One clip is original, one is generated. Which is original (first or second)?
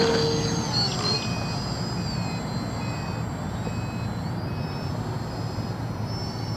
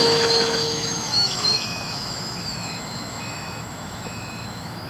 first